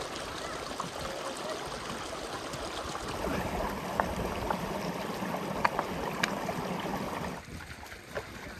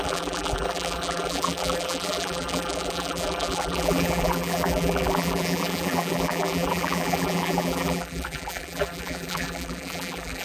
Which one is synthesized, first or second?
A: second